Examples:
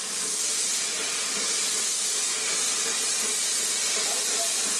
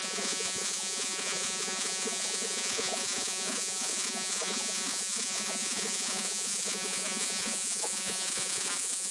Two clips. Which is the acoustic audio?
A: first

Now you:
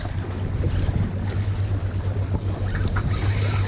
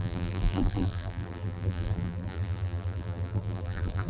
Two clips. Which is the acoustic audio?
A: first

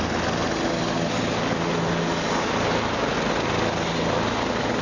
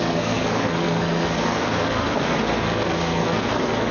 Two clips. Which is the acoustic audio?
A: first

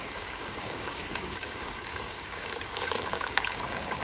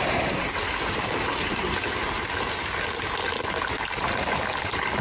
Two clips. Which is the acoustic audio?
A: second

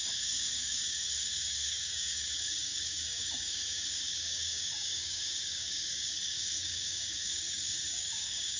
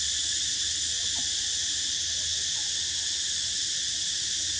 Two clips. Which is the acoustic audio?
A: second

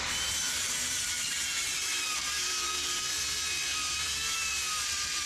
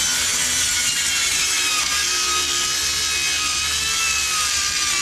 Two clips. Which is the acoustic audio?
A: second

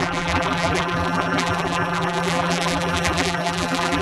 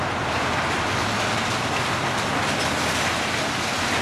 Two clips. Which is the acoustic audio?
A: second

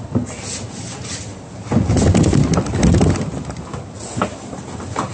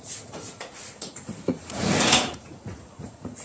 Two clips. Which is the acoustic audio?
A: first